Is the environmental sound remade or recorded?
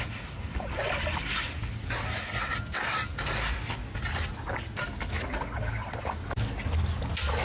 recorded